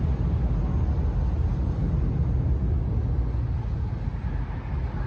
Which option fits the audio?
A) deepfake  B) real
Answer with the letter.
B